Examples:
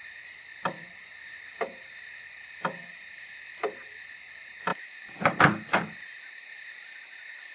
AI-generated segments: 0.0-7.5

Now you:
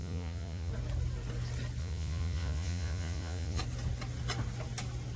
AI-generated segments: 0.0-0.7; 1.8-3.6

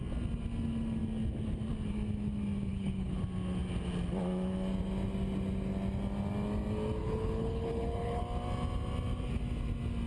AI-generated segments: 2.7-3.2; 7.0-8.2